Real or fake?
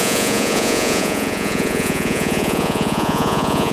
fake